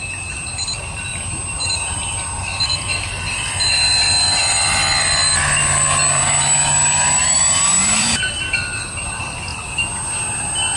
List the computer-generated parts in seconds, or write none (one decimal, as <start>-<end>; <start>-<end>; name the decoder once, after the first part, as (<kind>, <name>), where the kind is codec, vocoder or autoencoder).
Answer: 0.0-5.4 (vocoder, BigVGAN v2); 7.2-9.5